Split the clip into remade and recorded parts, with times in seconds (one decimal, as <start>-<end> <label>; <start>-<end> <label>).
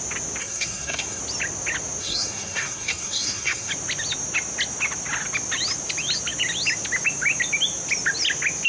0.0-0.4 recorded; 0.4-1.2 remade; 1.2-2.0 recorded; 2.0-3.7 remade; 3.7-8.7 recorded